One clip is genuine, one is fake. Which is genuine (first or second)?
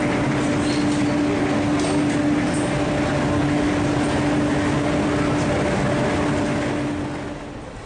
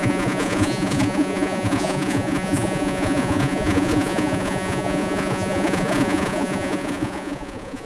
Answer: first